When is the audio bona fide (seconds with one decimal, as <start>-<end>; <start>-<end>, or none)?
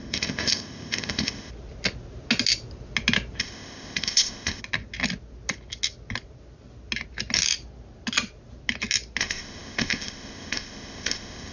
1.5-3.4; 4.6-9.2